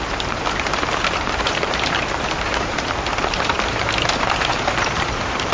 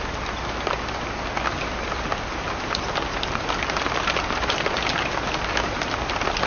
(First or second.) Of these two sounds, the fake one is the first